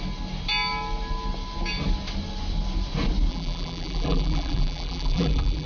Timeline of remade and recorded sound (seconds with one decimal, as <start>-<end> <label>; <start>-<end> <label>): 0.0-3.3 recorded; 3.3-5.7 remade